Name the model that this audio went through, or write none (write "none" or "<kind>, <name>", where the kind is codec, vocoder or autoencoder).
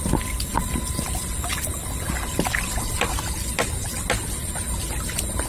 none